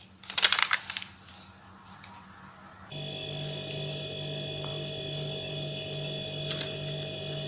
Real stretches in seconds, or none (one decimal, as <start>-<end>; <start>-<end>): 0.0-7.5